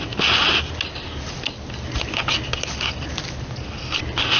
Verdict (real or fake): real